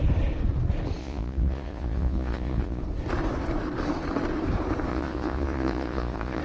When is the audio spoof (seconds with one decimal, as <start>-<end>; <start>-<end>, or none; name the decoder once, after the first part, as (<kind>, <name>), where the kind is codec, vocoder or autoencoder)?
1.0-2.8 (vocoder, Vocos); 4.9-6.4